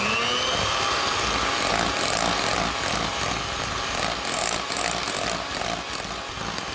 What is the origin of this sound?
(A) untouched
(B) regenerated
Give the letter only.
A